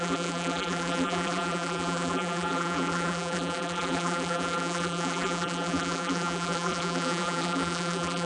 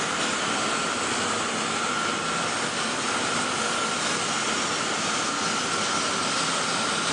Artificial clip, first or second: first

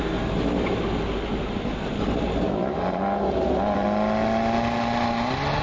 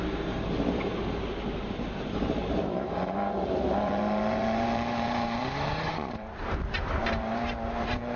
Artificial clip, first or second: second